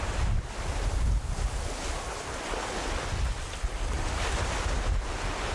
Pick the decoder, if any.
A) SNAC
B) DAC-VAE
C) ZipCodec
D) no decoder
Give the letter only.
D